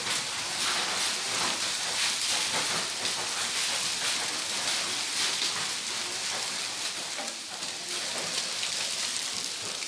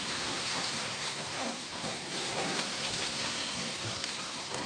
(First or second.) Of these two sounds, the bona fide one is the first